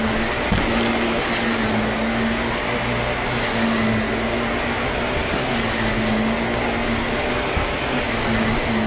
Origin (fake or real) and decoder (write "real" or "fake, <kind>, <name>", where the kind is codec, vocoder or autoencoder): real